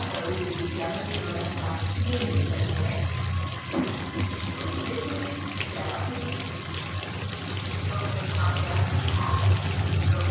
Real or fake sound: real